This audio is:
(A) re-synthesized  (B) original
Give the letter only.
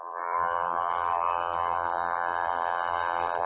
A